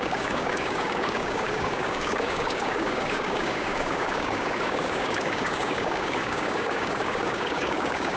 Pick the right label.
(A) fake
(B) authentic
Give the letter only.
A